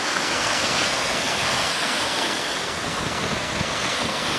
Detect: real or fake fake